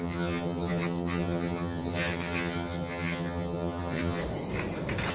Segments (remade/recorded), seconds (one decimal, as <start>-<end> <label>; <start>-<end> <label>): 0.0-4.2 remade; 4.2-5.1 recorded